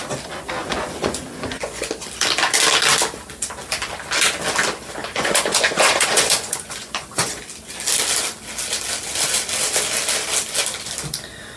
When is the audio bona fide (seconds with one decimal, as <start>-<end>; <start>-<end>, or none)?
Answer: 0.0-0.6; 1.9-5.0; 7.4-11.6